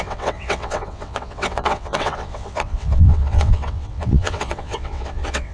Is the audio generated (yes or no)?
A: yes